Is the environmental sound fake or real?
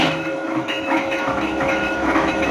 fake